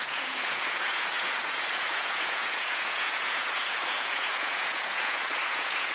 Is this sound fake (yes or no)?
yes